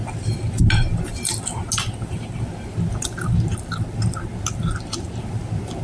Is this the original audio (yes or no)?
yes